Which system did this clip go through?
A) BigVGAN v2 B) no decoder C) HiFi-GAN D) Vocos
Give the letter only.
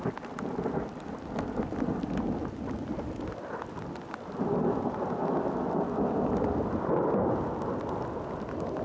B